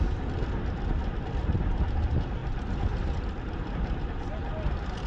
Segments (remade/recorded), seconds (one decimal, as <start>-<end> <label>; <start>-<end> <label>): 0.0-5.1 recorded